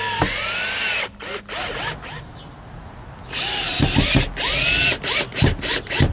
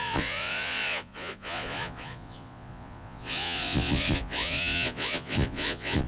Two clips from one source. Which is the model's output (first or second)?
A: second